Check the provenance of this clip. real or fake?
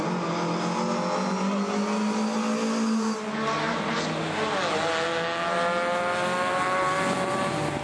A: real